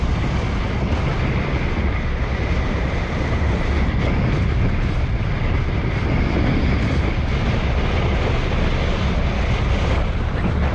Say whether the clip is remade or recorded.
recorded